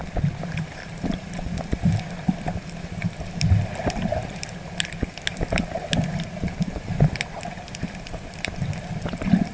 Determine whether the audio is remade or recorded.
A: recorded